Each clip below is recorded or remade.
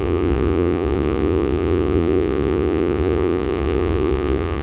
remade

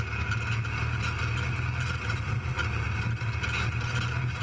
recorded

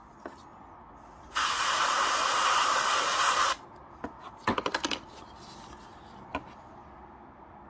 recorded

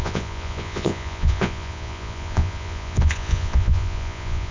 remade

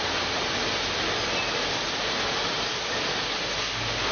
recorded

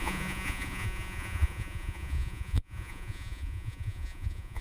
remade